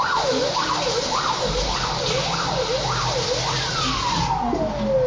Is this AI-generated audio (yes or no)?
no